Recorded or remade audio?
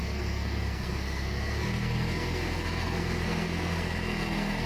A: remade